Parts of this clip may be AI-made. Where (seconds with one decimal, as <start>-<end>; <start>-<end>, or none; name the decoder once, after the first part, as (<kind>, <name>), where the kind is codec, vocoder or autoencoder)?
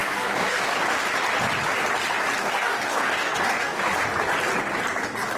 0.0-0.8 (codec, DAC); 2.4-3.9